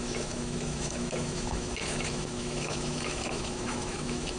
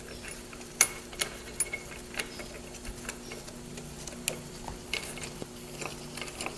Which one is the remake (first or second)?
first